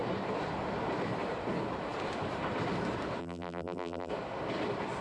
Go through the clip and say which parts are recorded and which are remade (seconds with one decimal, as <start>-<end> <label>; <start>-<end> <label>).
0.0-3.2 recorded; 3.2-4.1 remade; 4.1-5.0 recorded

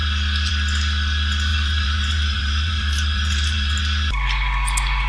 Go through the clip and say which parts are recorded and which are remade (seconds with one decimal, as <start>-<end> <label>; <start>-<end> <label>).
0.0-1.5 recorded; 1.5-3.8 remade; 3.8-5.1 recorded

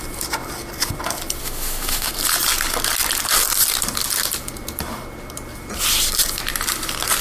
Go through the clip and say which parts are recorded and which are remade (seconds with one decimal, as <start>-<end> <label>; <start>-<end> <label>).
0.0-1.4 recorded; 1.4-2.1 remade; 2.1-7.2 recorded

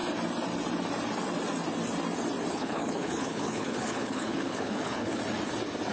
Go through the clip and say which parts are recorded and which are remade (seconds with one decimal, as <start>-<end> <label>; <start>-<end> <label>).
0.0-2.5 recorded; 2.5-5.2 remade; 5.2-5.9 recorded

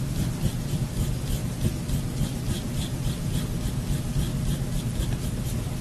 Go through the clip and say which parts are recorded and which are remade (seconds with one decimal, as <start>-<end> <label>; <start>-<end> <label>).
0.0-5.8 recorded

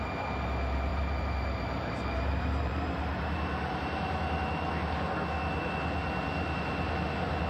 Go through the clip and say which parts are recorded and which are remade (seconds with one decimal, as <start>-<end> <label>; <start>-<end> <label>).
0.0-0.9 recorded; 0.9-4.0 remade; 4.0-7.5 recorded

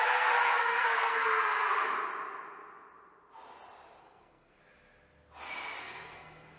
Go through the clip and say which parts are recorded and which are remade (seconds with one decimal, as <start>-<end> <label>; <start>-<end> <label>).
0.0-1.7 remade; 1.7-4.0 recorded; 4.0-4.6 remade; 4.6-5.8 recorded; 5.8-6.6 remade

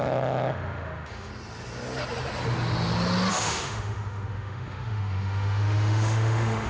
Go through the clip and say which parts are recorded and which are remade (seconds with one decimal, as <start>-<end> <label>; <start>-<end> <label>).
0.0-1.3 remade; 1.3-3.3 recorded; 3.3-6.7 remade